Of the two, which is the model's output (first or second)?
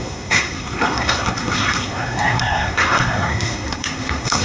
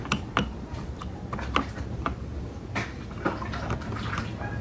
first